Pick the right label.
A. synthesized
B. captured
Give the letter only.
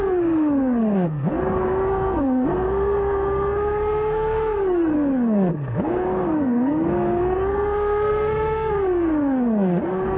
A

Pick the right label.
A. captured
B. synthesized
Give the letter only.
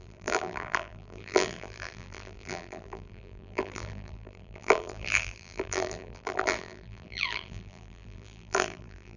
B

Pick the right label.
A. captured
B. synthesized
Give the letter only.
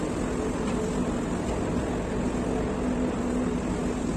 A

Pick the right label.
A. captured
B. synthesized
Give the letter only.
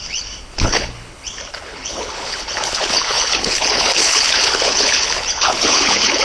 B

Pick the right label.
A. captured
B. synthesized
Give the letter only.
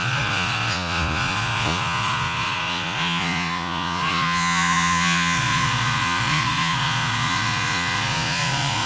B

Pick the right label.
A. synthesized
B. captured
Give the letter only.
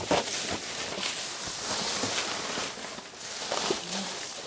B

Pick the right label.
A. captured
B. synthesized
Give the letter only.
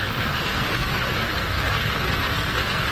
B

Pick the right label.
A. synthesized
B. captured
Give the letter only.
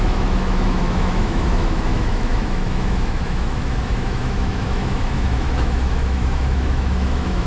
A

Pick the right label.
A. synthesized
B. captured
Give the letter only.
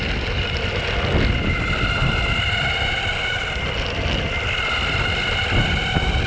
B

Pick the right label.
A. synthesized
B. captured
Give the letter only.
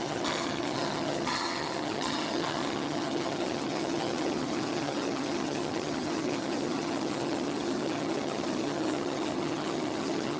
A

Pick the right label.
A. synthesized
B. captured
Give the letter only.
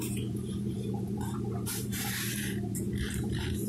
A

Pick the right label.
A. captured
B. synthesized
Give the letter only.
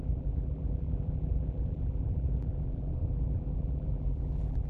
B